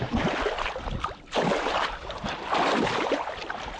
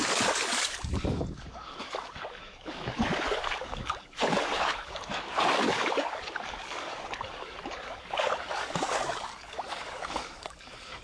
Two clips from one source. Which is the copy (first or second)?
second